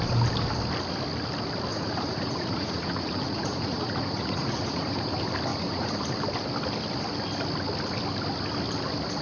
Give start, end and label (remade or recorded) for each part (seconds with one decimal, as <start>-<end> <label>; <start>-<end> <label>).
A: 0.0-1.7 recorded; 1.7-5.1 remade; 5.1-5.5 recorded; 5.5-6.0 remade; 6.0-9.2 recorded